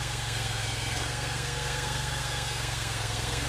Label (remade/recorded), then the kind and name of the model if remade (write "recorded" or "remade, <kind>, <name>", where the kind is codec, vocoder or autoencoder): remade, codec, SNAC